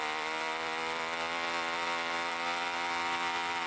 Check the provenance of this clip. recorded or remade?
remade